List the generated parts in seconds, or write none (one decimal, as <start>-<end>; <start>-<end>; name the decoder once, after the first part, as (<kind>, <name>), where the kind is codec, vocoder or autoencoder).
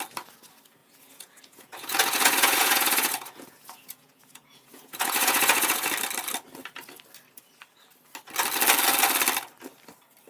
0.8-5.9 (vocoder, Vocos)